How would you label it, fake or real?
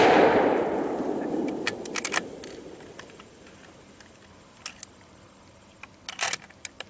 real